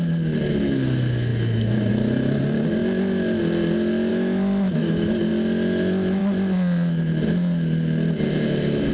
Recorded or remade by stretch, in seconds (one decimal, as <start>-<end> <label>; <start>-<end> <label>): 0.0-4.1 recorded; 4.1-5.3 remade; 5.3-8.9 recorded